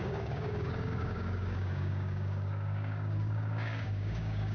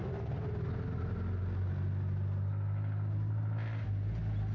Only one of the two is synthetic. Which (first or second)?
first